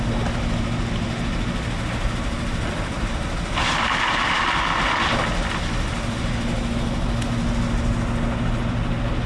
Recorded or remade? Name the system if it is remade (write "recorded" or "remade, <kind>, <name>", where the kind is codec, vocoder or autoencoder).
recorded